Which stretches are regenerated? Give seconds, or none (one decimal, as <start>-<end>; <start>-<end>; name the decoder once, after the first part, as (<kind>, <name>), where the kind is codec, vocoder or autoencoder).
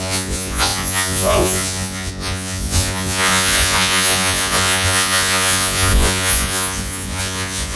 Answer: 0.0-7.8 (vocoder, Vocos)